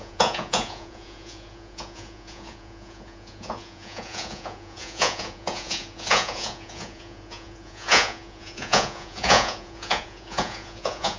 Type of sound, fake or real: fake